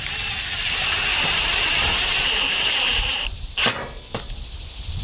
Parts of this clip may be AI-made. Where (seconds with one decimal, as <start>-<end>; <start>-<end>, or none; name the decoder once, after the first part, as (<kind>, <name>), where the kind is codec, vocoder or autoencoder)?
1.1-3.4 (vocoder, BigVGAN v2)